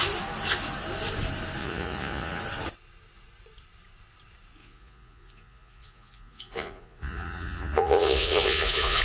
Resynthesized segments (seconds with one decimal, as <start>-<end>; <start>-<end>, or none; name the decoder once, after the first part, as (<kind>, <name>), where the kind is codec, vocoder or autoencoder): 1.6-2.4 (vocoder, Vocos); 4.6-9.0